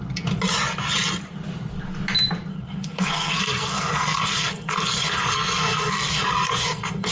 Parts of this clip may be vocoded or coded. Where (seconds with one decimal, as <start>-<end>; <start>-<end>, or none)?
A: 2.5-7.1